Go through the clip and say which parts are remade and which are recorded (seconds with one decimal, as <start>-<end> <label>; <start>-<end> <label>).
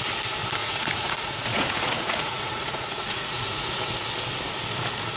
0.0-0.6 recorded; 0.6-3.7 remade; 3.7-5.2 recorded